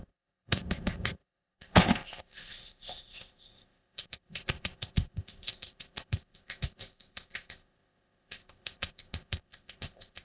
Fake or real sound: fake